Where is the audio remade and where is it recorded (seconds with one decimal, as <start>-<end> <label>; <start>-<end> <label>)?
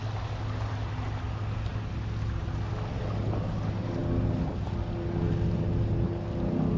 0.0-6.8 recorded